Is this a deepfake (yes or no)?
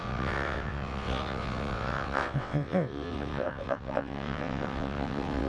yes